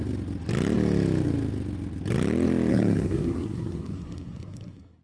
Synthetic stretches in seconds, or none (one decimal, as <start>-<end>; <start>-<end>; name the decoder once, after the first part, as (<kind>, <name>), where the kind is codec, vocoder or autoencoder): 2.7-5.0 (codec, SNAC)